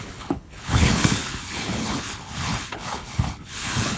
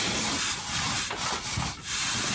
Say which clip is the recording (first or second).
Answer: second